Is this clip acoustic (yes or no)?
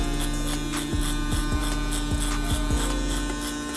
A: yes